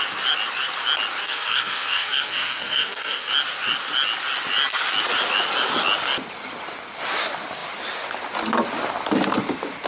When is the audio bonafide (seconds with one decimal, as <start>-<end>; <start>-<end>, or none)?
0.0-1.2; 3.3-9.9